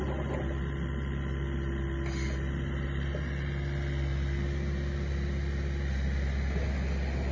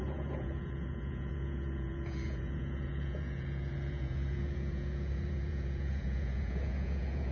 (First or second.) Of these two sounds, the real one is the first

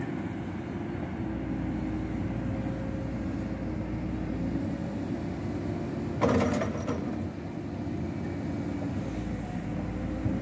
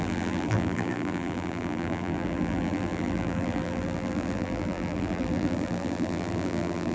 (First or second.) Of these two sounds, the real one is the first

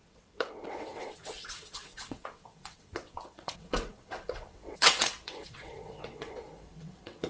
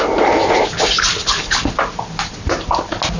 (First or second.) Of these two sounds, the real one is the second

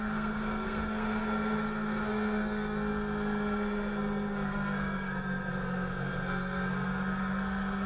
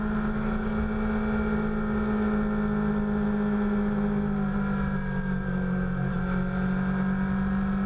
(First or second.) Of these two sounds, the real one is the second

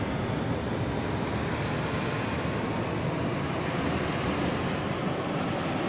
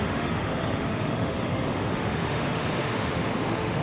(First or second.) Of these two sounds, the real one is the first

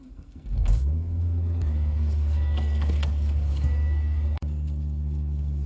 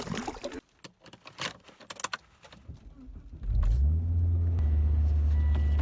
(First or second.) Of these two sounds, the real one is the second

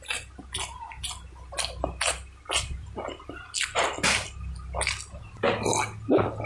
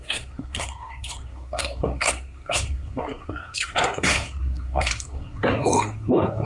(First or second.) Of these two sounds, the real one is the first